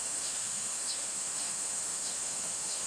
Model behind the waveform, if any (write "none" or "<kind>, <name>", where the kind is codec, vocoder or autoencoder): autoencoder, DAC-VAE